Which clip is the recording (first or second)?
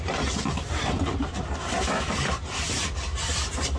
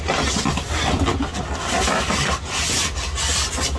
second